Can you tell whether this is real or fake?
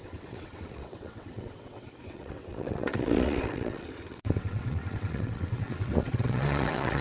fake